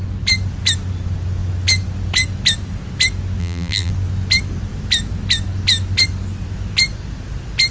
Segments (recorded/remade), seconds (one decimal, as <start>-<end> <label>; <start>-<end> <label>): 0.0-3.4 recorded; 3.4-3.9 remade; 3.9-7.7 recorded